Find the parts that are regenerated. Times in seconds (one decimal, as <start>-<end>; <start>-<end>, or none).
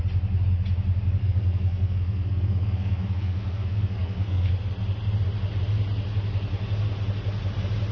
1.2-4.5